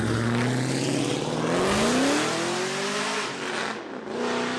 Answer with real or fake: real